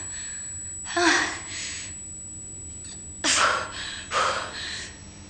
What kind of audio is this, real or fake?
real